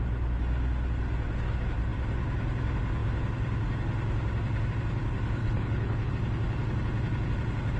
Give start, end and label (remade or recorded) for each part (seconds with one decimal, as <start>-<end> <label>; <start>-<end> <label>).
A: 0.0-5.4 recorded; 5.4-6.1 remade; 6.1-7.8 recorded